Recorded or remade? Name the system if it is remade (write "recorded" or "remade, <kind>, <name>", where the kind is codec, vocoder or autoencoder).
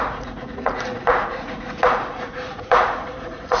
remade, vocoder, Vocos